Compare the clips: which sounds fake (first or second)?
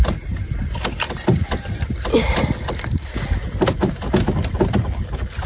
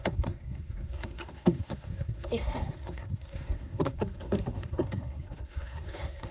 second